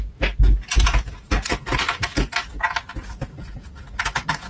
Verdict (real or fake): real